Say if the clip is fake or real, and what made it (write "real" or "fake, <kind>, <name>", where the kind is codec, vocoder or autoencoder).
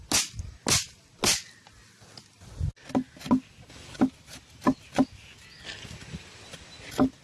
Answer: real